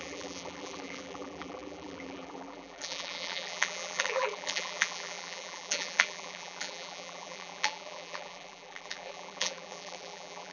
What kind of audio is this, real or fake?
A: fake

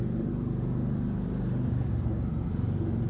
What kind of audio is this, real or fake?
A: real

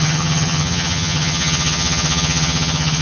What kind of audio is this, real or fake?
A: fake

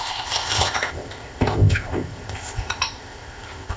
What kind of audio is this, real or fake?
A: fake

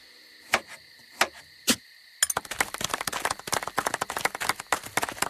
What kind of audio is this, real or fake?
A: real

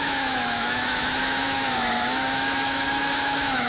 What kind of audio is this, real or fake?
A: fake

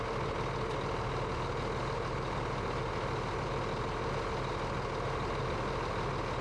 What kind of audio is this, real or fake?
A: real